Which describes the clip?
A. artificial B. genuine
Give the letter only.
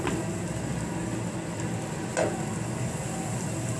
B